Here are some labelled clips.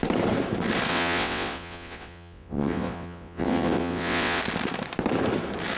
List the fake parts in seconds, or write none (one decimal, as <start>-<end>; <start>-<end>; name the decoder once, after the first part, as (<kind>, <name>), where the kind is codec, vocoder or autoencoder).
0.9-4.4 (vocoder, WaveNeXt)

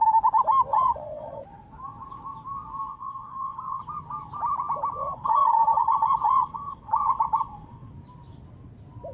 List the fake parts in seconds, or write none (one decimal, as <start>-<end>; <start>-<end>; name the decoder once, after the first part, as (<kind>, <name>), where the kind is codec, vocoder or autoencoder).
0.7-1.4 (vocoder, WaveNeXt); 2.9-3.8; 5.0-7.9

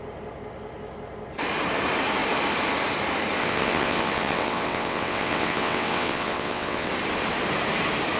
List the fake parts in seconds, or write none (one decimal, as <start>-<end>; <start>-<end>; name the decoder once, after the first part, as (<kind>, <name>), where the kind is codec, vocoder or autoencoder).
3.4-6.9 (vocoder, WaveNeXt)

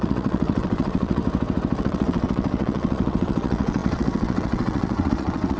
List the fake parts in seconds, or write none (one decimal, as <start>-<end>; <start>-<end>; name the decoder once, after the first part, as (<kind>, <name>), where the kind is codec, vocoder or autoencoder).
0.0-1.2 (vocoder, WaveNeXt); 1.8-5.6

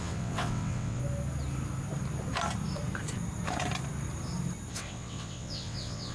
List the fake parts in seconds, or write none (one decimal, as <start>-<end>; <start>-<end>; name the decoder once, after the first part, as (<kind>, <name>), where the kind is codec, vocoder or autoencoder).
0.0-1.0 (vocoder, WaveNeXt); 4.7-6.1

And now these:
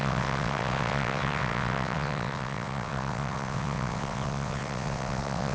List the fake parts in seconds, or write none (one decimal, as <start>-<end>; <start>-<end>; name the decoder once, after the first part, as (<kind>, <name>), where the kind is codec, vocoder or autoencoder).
0.0-5.5 (vocoder, WaveNeXt)